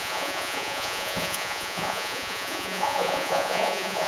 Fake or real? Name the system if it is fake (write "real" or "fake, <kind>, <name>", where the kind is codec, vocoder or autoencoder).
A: fake, vocoder, Vocos